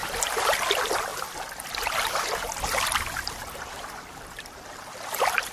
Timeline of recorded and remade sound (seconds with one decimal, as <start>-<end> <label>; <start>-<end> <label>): 0.0-0.7 remade; 0.7-5.5 recorded

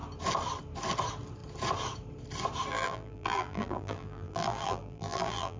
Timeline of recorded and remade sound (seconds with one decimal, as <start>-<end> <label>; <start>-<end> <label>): 0.0-2.7 recorded; 2.7-5.6 remade

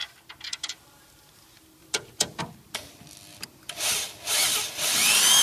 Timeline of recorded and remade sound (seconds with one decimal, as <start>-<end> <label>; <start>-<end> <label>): 0.0-1.8 recorded; 1.8-2.4 remade; 2.4-3.3 recorded; 3.3-3.9 remade; 3.9-5.4 recorded

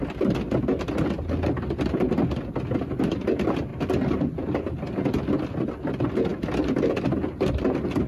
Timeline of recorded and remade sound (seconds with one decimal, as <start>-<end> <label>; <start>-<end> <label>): 0.0-3.7 recorded; 3.7-4.7 remade; 4.7-6.3 recorded; 6.3-7.2 remade; 7.2-8.1 recorded

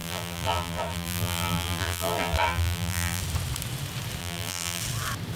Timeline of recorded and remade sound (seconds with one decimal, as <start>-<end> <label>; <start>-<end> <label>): 0.0-3.2 remade; 3.2-4.2 recorded; 4.2-4.8 remade; 4.8-5.4 recorded

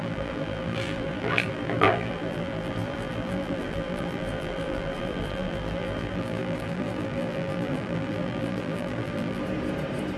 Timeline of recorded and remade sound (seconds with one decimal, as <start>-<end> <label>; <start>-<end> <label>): 0.0-9.4 remade; 9.4-10.2 recorded